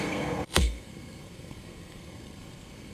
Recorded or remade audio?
remade